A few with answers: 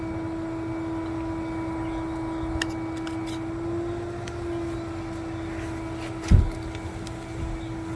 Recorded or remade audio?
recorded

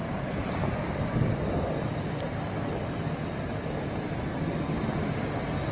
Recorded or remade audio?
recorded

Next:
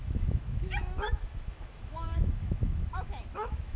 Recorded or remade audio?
remade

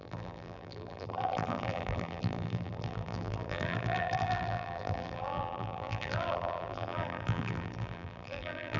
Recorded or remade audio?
remade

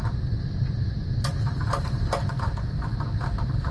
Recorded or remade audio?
remade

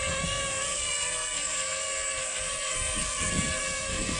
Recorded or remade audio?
remade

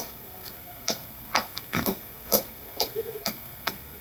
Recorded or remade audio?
remade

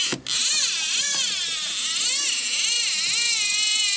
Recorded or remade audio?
recorded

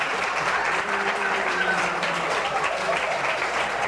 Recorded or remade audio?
remade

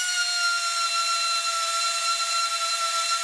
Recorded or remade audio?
recorded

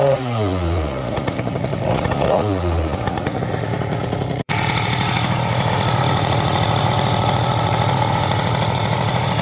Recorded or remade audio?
remade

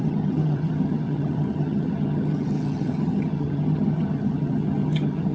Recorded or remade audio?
remade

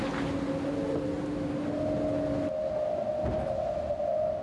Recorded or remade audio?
recorded